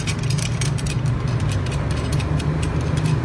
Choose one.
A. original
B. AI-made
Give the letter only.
A